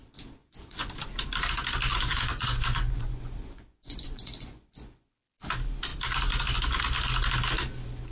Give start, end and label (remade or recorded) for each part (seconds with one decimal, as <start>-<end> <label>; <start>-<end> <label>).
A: 0.0-0.4 recorded; 0.4-0.9 remade; 0.9-1.9 recorded; 1.9-5.1 remade; 5.1-8.1 recorded